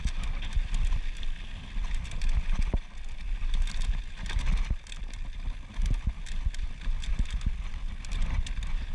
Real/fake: real